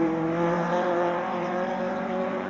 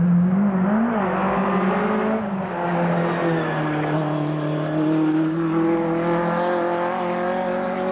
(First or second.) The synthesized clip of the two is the first